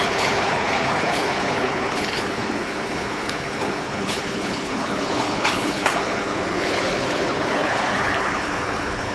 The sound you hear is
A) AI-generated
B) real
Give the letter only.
A